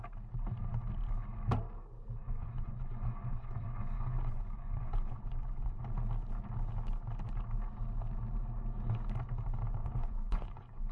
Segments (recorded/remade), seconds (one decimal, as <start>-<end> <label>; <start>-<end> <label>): 0.0-2.2 recorded; 2.2-5.8 remade; 5.8-9.8 recorded; 9.8-10.9 remade